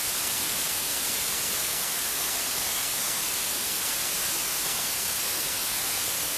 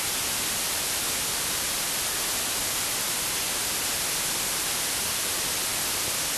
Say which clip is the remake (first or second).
first